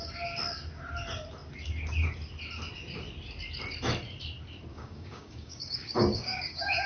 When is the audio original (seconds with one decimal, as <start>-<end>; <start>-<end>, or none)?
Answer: 0.0-4.7